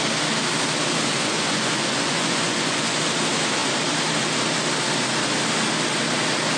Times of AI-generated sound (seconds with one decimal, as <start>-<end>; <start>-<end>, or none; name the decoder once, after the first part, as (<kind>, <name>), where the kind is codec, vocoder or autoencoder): 1.1-3.0 (vocoder, Vocos)